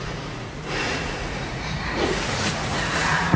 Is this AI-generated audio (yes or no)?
yes